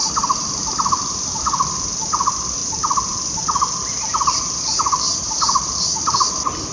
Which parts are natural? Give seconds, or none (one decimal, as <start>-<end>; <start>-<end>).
0.0-6.7